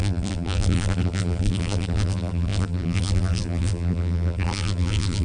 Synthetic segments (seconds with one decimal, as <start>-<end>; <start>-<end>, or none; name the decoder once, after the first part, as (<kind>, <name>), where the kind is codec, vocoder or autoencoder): 0.0-5.2 (vocoder, BigVGAN v2)